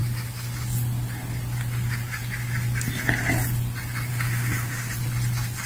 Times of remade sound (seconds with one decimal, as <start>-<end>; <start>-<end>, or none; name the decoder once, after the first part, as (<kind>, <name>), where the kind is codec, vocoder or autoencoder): 4.1-4.9 (autoencoder, DAC-VAE)